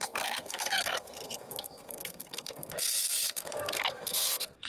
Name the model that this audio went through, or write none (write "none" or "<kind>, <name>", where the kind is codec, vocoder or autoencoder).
codec, SNAC